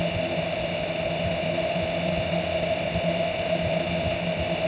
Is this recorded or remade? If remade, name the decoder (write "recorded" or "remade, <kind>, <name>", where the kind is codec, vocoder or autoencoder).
recorded